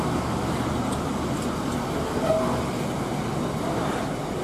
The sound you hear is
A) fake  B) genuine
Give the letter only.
B